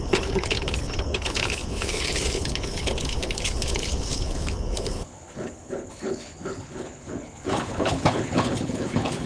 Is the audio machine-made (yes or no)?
yes